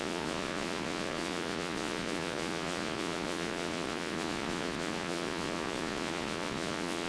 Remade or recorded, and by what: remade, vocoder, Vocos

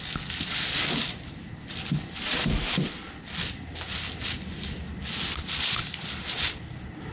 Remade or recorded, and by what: recorded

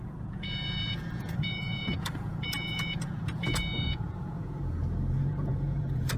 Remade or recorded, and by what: remade, vocoder, Vocos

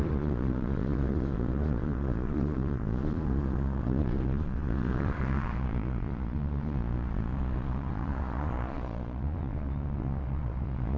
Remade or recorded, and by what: remade, vocoder, Vocos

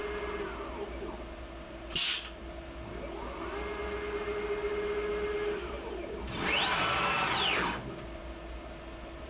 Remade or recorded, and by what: recorded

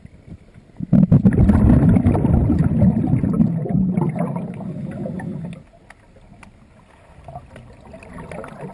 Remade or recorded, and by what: recorded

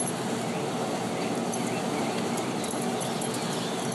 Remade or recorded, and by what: recorded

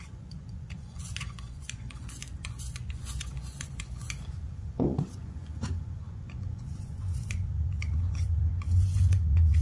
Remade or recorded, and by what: remade, vocoder, Vocos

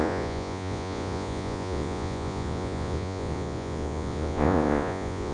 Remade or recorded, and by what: remade, vocoder, Vocos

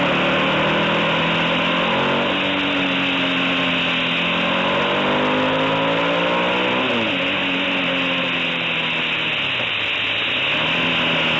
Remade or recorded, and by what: recorded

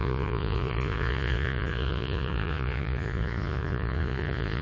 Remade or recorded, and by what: remade, vocoder, Vocos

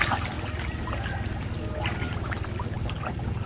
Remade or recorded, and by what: recorded